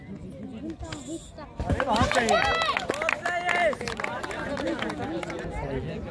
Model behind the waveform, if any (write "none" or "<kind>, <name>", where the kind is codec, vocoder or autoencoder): none